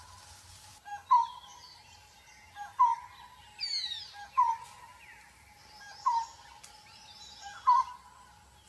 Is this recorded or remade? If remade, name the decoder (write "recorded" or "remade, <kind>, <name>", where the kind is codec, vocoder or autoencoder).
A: recorded